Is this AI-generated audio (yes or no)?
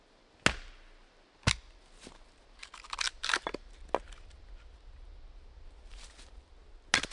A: no